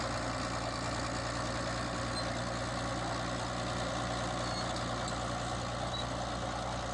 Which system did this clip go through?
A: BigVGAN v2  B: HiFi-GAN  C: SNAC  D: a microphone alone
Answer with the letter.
D